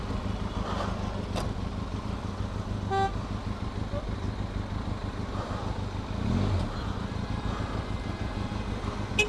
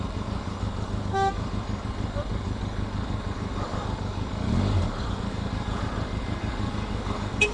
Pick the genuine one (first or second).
first